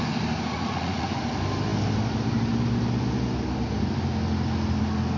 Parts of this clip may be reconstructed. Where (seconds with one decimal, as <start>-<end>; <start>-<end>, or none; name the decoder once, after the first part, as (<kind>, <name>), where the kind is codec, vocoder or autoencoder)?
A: 0.5-1.1 (vocoder, Vocos)